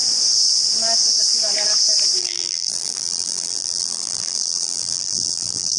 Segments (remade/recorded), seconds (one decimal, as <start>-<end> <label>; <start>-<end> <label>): 0.0-2.2 recorded; 2.2-5.8 remade